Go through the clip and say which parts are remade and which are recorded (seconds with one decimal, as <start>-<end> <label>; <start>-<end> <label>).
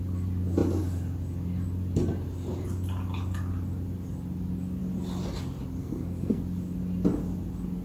0.0-5.8 recorded; 5.8-6.4 remade; 6.4-7.8 recorded